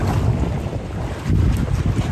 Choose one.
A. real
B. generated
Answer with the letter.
A